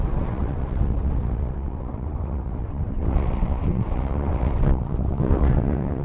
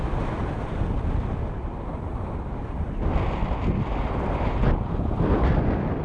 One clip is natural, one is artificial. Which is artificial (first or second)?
first